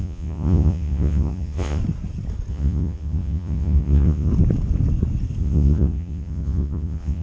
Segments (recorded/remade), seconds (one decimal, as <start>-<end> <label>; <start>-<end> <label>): 0.0-1.8 remade; 1.8-2.5 recorded; 2.5-4.3 remade; 4.3-5.4 recorded; 5.4-7.2 remade